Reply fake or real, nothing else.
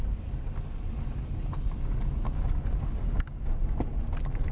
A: real